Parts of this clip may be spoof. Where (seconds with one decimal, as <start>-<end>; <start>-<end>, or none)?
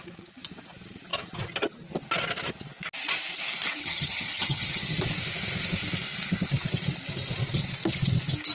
3.8-5.0